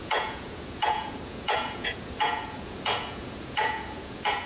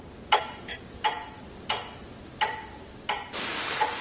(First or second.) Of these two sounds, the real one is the second